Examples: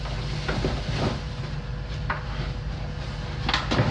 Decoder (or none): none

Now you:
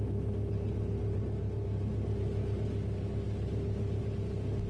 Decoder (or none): none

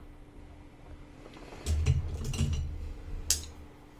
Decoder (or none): none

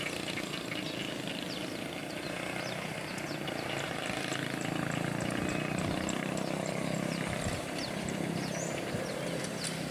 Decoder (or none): none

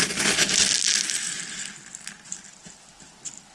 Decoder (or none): none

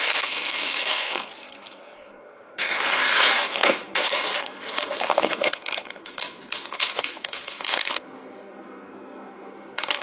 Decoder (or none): codec, SNAC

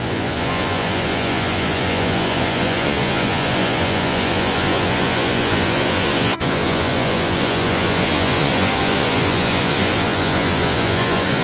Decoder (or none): vocoder, Vocos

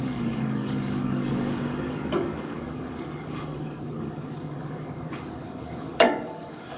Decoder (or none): codec, DAC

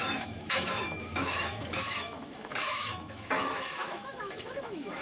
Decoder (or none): autoencoder, DAC-VAE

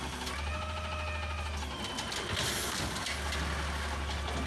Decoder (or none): none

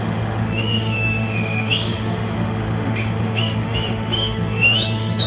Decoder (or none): autoencoder, DAC-VAE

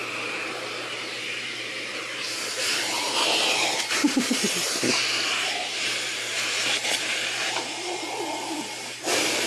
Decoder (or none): vocoder, BigVGAN v2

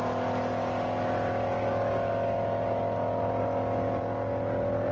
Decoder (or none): none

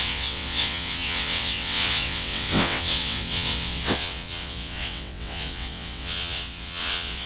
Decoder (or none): vocoder, WaveNeXt